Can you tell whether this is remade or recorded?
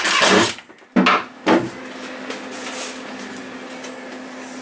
recorded